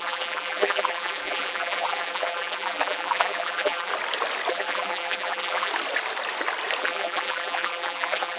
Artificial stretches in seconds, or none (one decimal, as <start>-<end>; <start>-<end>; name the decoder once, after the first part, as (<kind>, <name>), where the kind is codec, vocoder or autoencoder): 0.0-3.9 (vocoder, BigVGAN v2); 4.5-5.7; 6.8-8.4